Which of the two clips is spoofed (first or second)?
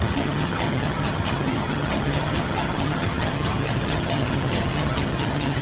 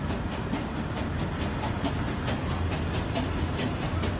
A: first